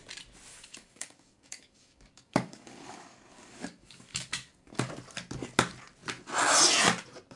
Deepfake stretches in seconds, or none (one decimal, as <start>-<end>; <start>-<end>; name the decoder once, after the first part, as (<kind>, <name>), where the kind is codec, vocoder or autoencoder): 0.5-4.9 (codec, DAC)